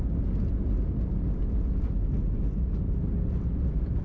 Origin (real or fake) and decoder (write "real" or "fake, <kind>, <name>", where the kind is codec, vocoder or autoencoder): real